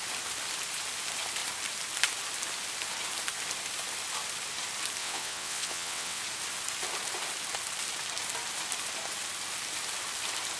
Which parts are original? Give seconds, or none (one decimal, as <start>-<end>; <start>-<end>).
0.0-5.0; 6.2-10.6